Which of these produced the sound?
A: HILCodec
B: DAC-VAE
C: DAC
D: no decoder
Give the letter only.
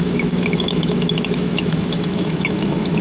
B